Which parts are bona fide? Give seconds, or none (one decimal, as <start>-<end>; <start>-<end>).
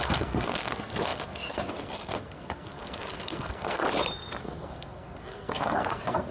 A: 3.8-4.4